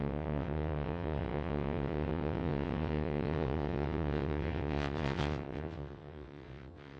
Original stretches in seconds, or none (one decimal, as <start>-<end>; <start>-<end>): none